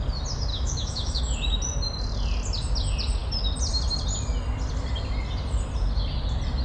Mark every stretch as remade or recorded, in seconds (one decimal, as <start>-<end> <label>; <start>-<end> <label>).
0.0-0.5 recorded; 0.5-1.2 remade; 1.2-6.6 recorded